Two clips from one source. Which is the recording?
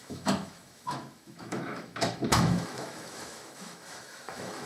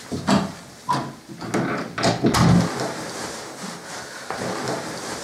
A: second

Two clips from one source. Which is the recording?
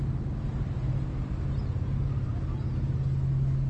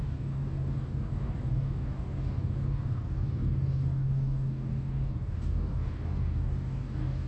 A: first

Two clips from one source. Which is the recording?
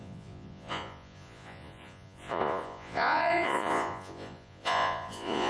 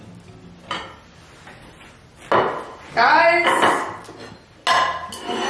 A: second